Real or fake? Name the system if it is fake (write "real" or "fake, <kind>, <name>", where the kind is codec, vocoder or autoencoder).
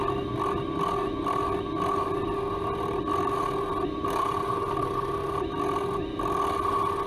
real